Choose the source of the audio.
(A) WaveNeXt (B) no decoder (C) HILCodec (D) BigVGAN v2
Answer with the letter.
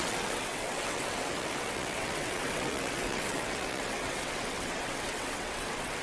A